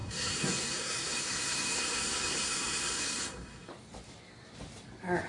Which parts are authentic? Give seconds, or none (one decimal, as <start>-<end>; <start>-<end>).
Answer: 3.7-5.3